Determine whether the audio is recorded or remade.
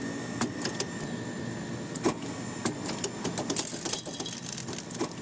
recorded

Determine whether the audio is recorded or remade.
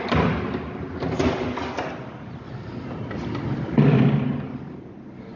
recorded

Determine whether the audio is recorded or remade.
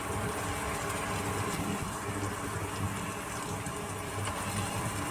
recorded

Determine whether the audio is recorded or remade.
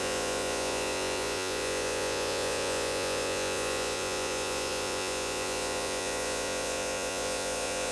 remade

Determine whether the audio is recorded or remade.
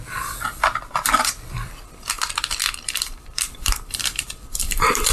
remade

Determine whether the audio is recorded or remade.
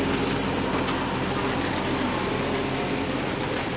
recorded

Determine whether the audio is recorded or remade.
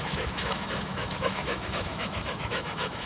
remade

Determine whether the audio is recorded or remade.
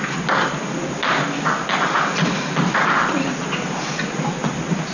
recorded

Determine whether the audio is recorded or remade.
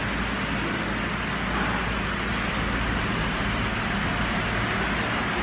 recorded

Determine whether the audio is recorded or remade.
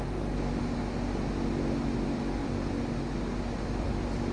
recorded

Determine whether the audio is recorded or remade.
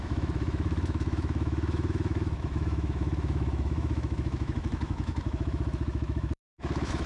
remade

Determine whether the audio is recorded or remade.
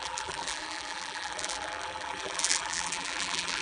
remade